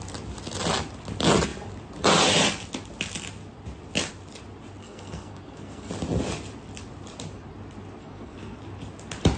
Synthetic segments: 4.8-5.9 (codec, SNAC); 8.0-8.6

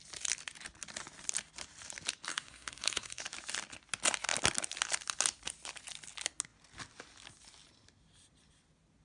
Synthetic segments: 2.3-3.2 (codec, SNAC)

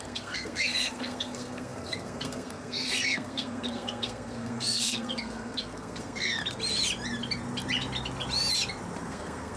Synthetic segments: 0.0-6.4 (codec, SNAC); 9.0-9.6